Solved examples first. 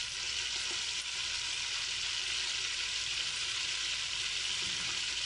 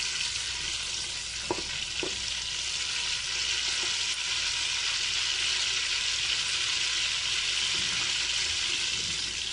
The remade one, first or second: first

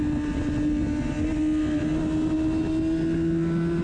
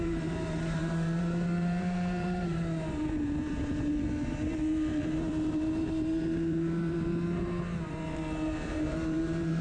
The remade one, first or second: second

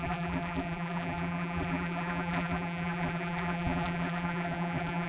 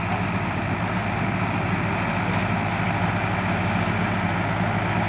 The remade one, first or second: first